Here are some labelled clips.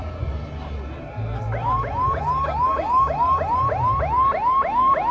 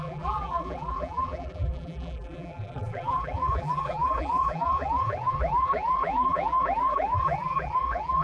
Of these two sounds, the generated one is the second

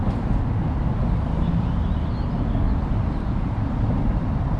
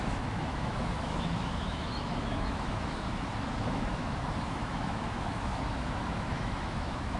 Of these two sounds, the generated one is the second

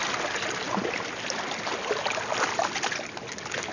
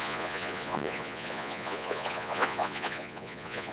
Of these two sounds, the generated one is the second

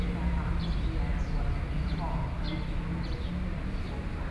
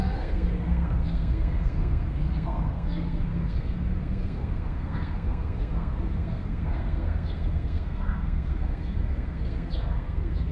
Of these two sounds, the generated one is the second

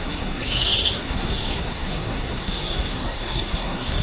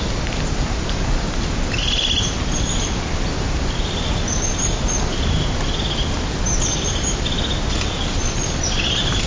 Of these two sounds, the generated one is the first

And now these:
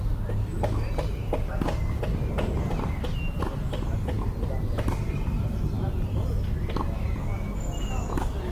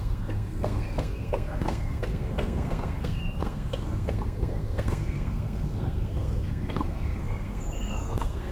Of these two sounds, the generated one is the second